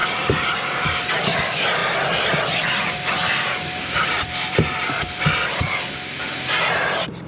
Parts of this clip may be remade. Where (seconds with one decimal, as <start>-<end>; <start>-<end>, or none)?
0.0-1.1; 1.8-6.2